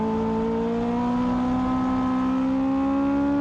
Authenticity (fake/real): real